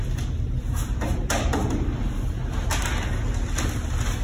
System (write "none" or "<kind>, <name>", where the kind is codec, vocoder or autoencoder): none